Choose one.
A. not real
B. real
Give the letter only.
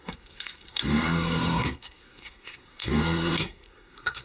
A